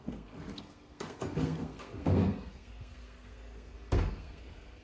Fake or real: fake